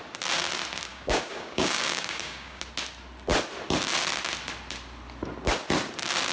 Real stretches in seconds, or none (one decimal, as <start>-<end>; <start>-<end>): 0.0-0.9; 2.6-6.3